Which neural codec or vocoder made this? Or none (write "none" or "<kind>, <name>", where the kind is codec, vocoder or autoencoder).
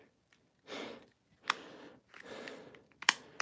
none